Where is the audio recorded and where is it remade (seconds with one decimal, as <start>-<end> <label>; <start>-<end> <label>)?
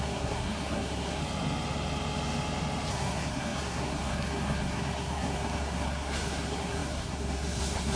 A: 0.0-1.2 remade; 1.2-2.9 recorded; 2.9-8.0 remade